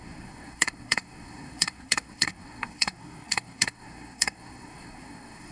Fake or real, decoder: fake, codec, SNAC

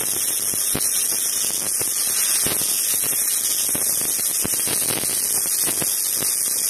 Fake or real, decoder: real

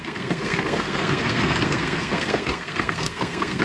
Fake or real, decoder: fake, codec, SNAC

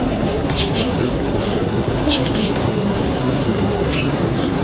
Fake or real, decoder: fake, codec, SNAC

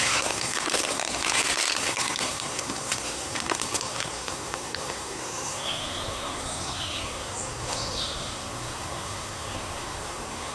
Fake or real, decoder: fake, codec, SNAC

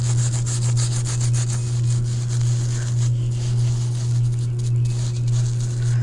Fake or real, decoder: real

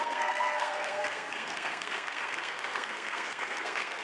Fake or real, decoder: fake, codec, SNAC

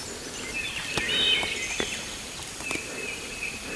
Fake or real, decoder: real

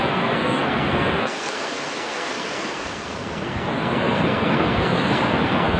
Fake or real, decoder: fake, codec, SNAC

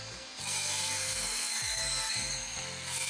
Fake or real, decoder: fake, codec, SNAC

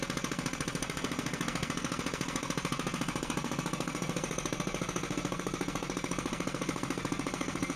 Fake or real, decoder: fake, codec, SNAC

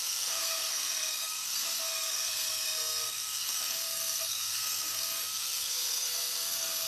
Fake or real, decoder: fake, codec, SNAC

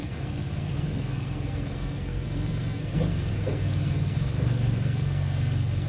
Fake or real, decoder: fake, codec, SNAC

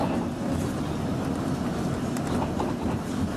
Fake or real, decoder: real